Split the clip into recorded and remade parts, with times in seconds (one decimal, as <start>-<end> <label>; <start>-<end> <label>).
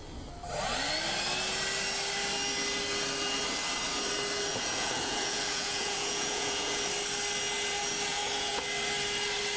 0.0-4.5 recorded; 4.5-6.8 remade; 6.8-8.1 recorded; 8.1-8.6 remade; 8.6-9.6 recorded